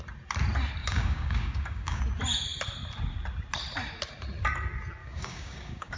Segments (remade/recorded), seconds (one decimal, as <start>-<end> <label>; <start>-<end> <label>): 0.0-0.8 recorded; 0.8-2.0 remade; 2.0-5.0 recorded; 5.0-6.0 remade